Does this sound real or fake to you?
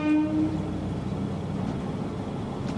real